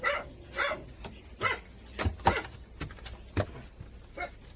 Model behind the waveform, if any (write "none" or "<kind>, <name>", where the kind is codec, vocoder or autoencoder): none